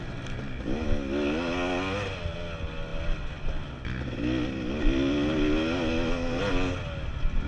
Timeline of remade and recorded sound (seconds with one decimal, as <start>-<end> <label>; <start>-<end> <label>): 0.0-7.5 recorded